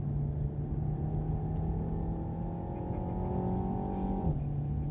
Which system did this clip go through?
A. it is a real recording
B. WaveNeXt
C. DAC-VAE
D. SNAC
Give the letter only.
A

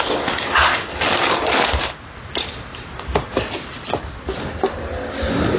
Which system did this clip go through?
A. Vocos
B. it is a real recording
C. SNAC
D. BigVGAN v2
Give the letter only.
B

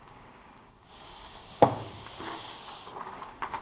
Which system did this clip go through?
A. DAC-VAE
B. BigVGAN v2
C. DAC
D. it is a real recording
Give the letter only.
C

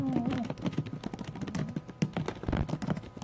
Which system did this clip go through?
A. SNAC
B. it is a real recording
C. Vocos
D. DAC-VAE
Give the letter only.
B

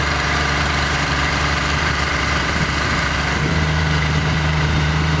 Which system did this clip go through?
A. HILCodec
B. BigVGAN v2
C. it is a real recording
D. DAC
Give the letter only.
B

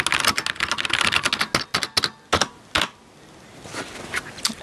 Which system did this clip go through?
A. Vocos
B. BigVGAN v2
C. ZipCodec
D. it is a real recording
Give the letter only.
D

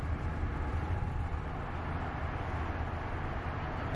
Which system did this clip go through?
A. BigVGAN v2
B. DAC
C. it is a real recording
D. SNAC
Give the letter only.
C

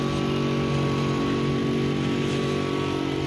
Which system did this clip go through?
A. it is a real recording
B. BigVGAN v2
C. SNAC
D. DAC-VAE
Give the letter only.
A